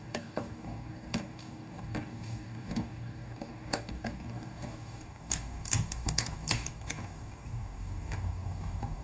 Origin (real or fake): fake